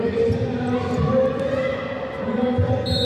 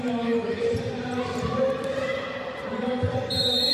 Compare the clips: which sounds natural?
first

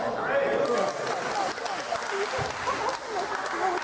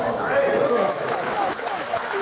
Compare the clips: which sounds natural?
first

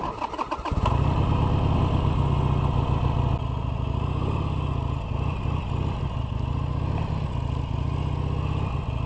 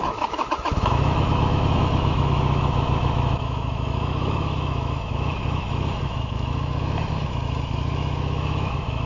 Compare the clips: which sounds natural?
first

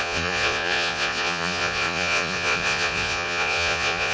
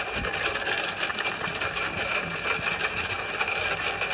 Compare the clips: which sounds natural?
second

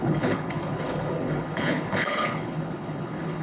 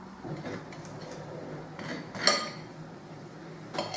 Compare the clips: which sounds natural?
second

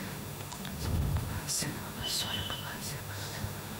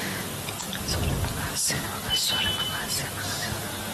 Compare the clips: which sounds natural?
second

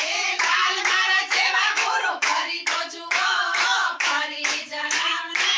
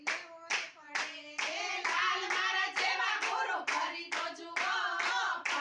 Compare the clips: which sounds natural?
second